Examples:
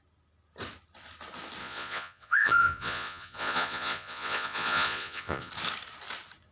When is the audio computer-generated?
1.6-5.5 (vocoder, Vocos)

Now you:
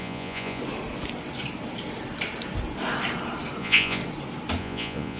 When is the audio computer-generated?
0.0-0.6 (vocoder, Vocos); 3.6-4.0; 4.6-5.2

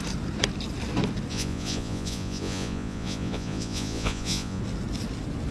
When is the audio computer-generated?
1.3-4.6 (vocoder, Vocos)

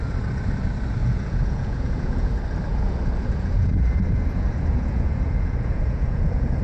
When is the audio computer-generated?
1.0-2.3 (vocoder, Vocos); 2.7-6.6